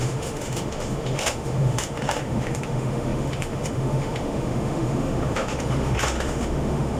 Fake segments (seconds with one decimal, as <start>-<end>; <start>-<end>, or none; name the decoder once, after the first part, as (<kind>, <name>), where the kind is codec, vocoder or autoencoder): 0.0-7.0 (autoencoder, DAC-VAE)